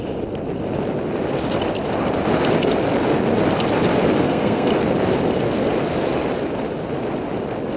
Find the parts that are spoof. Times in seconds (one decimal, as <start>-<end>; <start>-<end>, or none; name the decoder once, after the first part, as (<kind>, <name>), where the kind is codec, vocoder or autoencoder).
4.2-4.7 (codec, SNAC)